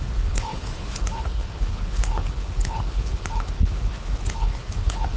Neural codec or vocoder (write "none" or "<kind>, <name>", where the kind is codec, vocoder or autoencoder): codec, HILCodec